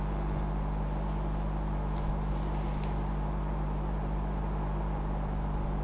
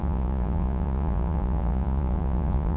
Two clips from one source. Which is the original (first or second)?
first